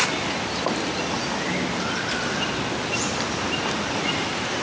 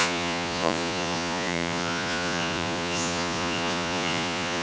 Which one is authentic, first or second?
first